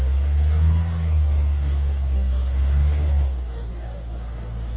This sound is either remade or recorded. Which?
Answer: remade